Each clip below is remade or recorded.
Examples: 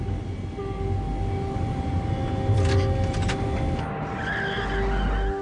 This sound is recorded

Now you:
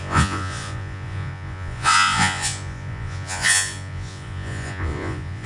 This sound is remade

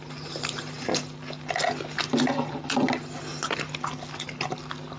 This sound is recorded